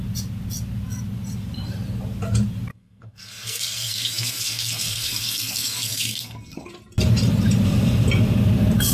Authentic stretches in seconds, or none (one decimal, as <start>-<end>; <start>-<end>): 0.0-2.7; 6.7-8.9